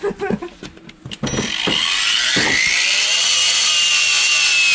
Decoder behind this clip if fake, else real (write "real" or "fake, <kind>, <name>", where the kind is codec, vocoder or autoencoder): real